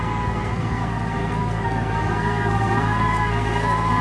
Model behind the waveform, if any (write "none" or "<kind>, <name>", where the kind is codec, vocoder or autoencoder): codec, SNAC